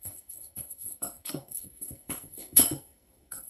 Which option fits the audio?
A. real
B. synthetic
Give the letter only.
B